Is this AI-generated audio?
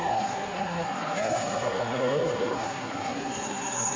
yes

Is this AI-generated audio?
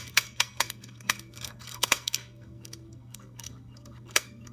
yes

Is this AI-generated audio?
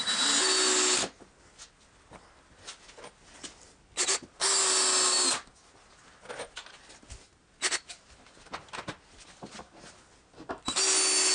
no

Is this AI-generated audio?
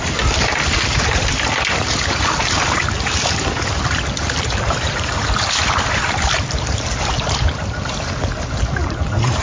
yes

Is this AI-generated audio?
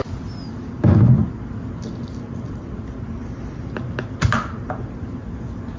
no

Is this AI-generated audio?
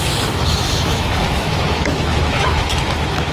yes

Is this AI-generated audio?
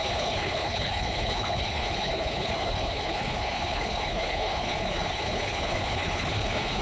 yes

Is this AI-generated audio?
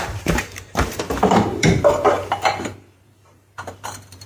yes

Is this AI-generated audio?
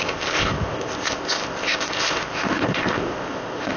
yes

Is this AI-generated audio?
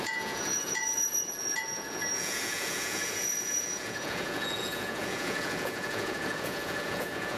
yes